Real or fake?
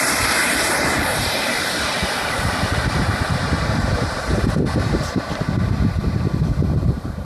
fake